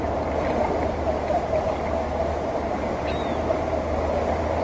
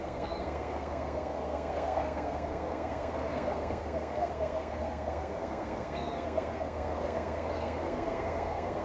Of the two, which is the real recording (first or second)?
first